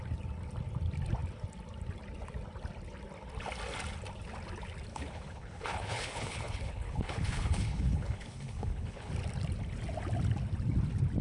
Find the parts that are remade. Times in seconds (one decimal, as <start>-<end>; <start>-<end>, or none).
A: 4.9-9.1